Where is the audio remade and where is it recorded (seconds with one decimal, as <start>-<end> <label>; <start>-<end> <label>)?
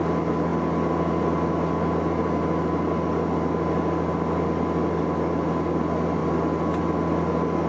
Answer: 0.0-7.7 recorded